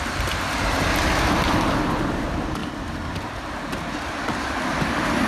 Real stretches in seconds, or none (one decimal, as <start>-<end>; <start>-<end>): 0.0-5.3